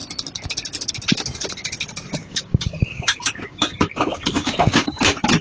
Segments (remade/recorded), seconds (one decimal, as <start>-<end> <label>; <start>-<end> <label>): 0.0-2.2 recorded; 2.2-5.0 remade; 5.0-5.4 recorded